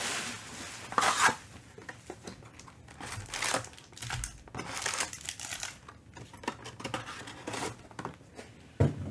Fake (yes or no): no